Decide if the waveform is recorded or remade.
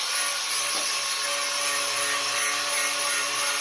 recorded